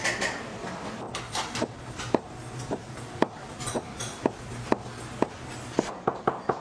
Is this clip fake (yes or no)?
no